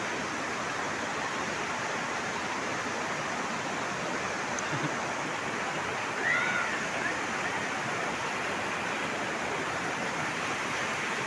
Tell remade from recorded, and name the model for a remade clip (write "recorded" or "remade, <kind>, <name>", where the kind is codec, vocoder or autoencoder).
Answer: recorded